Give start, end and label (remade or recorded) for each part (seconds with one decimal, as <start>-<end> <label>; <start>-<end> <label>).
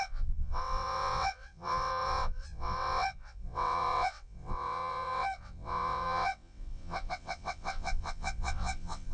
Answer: 0.0-9.1 remade